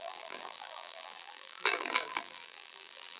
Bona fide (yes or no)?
no